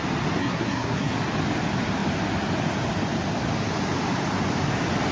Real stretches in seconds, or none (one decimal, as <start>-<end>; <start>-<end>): 0.0-0.4; 1.1-5.1